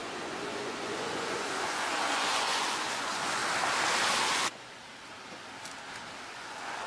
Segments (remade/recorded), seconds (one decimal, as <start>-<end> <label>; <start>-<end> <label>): 0.0-3.4 remade; 3.4-4.2 recorded; 4.2-4.8 remade; 4.8-6.3 recorded; 6.3-6.9 remade

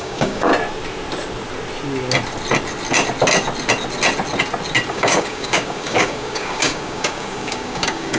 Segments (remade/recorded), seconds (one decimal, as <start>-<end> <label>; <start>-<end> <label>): 0.0-0.5 remade; 0.5-4.9 recorded; 4.9-8.2 remade

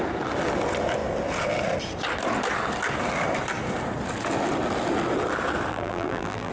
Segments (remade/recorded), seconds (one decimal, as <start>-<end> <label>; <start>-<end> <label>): 0.0-5.7 recorded; 5.7-6.5 remade

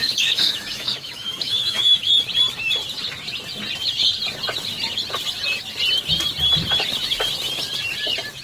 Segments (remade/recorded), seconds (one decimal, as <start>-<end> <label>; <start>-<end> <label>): 0.0-2.1 remade; 2.1-8.4 recorded

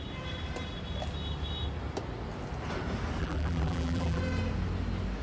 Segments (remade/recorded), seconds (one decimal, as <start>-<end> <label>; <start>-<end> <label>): 0.0-3.2 recorded; 3.2-4.2 remade; 4.2-5.2 recorded